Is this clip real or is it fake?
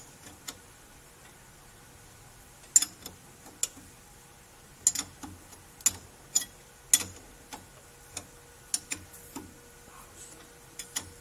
real